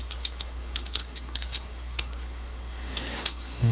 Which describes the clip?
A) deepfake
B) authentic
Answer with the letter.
A